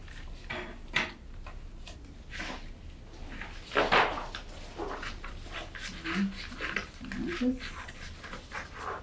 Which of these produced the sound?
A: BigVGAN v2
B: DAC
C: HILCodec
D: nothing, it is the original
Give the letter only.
D